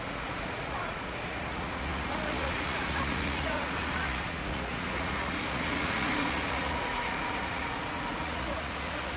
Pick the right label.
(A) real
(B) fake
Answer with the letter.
B